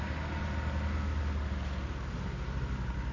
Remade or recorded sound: recorded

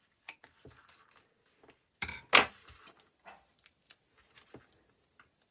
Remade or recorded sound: recorded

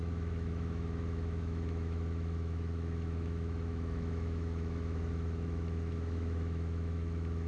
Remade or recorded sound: remade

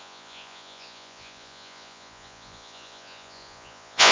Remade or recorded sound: remade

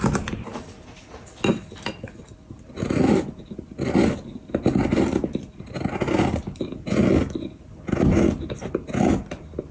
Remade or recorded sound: recorded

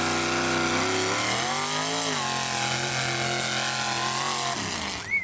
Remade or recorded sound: recorded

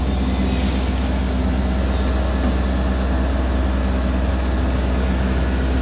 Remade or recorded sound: recorded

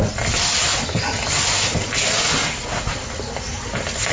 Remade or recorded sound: recorded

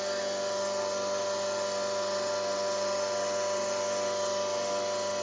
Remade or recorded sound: recorded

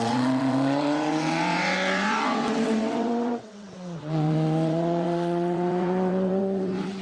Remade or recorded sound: remade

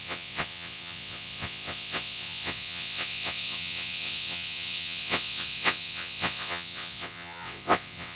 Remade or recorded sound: remade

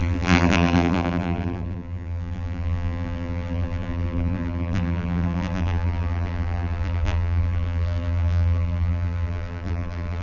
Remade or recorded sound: remade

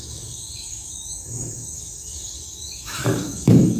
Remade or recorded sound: remade